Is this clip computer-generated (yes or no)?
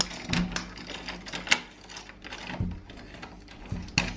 no